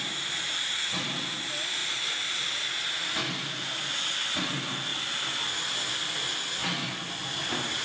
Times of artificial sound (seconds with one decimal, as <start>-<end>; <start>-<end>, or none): none